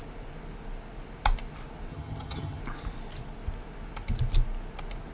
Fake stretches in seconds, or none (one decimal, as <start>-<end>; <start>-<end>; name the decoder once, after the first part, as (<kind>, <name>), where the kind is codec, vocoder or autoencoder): 1.9-2.6 (vocoder, HiFi-GAN)